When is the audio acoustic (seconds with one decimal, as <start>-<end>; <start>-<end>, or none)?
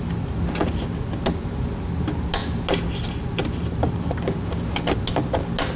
0.0-5.8